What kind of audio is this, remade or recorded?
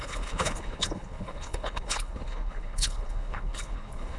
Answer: remade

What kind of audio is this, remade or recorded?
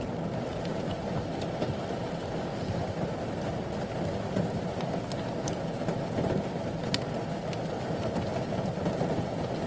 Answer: recorded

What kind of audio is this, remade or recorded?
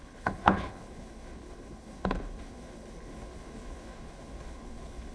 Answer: remade